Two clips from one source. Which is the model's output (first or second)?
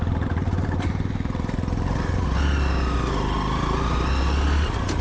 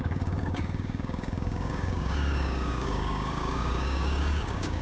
second